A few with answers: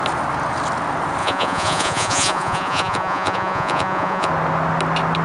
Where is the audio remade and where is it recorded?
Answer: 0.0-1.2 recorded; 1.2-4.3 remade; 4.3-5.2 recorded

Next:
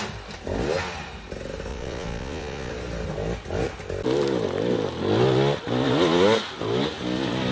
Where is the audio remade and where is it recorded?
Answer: 0.0-1.7 recorded; 1.7-2.7 remade; 2.7-7.5 recorded